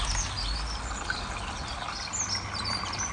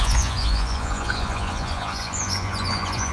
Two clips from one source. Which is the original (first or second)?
first